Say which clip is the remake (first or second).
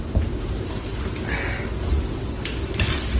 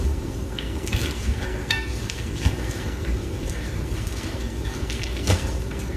second